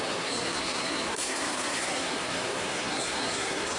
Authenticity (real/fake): fake